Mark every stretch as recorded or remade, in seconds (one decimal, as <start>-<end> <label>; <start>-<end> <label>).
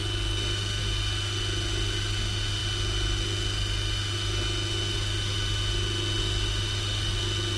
0.0-7.6 recorded